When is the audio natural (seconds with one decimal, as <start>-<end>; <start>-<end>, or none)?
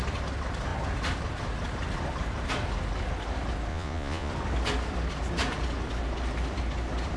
0.0-3.7; 4.3-7.2